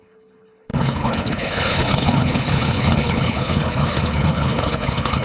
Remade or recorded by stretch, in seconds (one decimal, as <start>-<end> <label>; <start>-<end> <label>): 0.0-5.2 remade